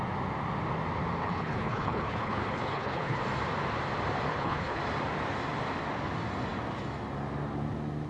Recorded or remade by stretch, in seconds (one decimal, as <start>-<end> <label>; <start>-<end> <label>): 0.0-1.2 recorded; 1.2-3.2 remade; 3.2-4.3 recorded; 4.3-4.8 remade; 4.8-8.1 recorded